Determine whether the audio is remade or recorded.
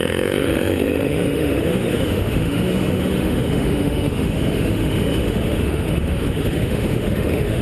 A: remade